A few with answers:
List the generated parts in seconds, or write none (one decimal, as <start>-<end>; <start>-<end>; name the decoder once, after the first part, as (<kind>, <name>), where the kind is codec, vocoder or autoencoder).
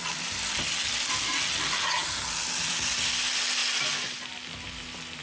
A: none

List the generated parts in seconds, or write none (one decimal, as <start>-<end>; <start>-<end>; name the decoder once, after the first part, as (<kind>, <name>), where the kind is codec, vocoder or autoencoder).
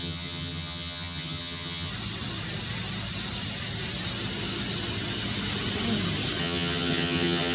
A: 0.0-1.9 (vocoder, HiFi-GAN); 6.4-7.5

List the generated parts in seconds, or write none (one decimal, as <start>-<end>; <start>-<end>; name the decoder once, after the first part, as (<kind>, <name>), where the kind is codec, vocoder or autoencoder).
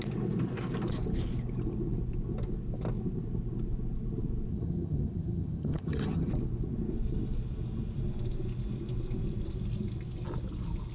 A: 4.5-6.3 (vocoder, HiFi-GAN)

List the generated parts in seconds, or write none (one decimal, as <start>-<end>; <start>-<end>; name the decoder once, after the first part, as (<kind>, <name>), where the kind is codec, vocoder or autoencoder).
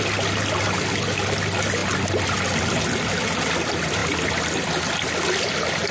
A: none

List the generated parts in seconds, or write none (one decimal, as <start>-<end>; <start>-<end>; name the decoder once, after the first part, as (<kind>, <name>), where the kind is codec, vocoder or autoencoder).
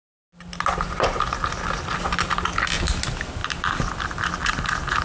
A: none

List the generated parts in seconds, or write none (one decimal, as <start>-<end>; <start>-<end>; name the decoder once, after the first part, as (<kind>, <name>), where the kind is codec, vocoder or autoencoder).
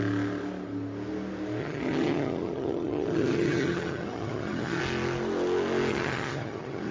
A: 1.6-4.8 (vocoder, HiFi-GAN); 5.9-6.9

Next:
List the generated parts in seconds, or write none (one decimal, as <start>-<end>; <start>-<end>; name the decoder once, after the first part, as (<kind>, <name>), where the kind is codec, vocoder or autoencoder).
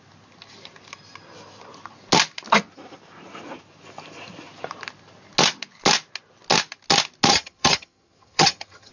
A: 7.3-8.9 (vocoder, HiFi-GAN)